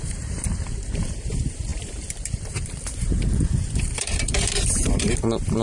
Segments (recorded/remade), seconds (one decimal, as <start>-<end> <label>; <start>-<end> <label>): 0.0-5.6 remade